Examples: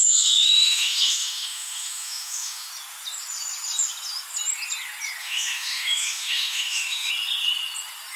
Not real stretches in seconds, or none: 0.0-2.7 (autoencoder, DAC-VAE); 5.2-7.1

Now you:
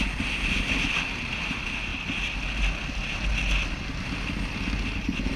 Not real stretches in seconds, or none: none

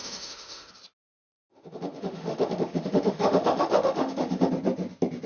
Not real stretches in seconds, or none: 0.0-0.7 (autoencoder, DAC-VAE); 1.3-4.5

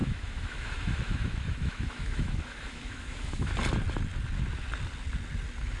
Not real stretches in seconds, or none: 0.0-3.5 (autoencoder, DAC-VAE)

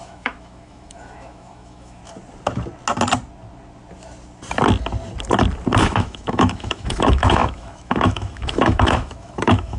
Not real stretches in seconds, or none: 0.0-2.0 (autoencoder, DAC-VAE); 5.8-9.8

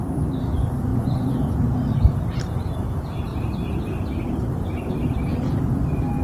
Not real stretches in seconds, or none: none

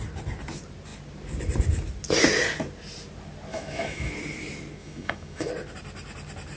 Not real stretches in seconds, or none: 3.5-4.1 (autoencoder, DAC-VAE); 4.8-5.5

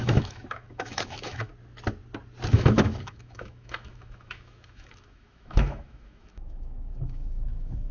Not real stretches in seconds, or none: 0.0-1.5 (autoencoder, DAC-VAE); 2.5-7.9